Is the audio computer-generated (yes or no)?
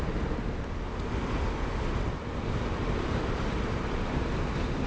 no